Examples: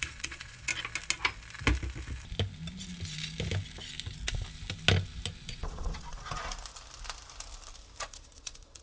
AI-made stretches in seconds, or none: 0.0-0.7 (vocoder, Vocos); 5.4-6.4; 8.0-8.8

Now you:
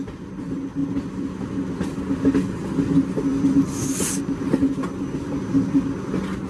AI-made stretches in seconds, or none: none